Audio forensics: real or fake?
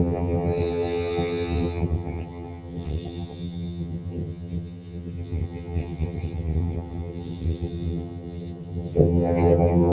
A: fake